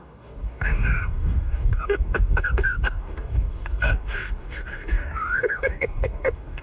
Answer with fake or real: fake